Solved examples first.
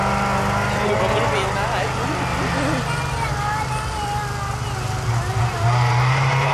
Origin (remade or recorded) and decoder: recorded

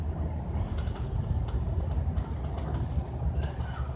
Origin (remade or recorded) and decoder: recorded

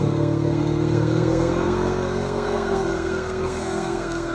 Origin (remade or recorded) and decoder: remade, codec, SNAC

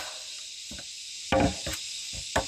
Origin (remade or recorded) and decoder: recorded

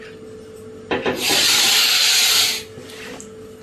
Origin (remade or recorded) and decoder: recorded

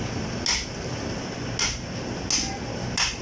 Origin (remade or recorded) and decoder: recorded